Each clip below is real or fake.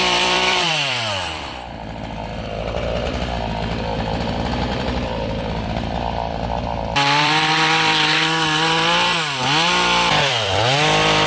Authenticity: fake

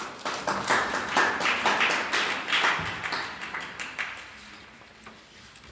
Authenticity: fake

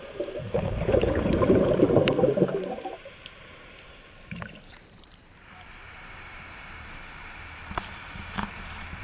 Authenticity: fake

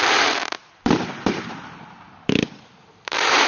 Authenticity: fake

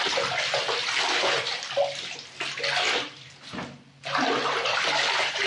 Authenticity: fake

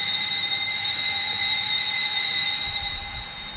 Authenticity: fake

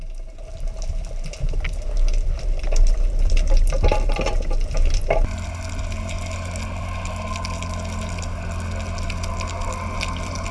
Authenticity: real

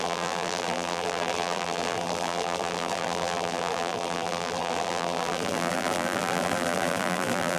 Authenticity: fake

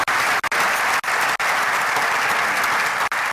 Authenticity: real